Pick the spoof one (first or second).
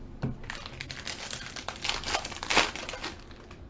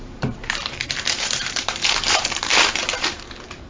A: second